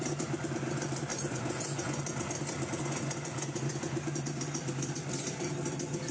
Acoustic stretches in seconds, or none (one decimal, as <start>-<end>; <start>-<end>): 0.0-1.1; 2.0-2.8; 3.7-6.1